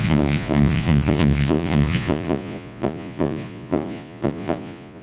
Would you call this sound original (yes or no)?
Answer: no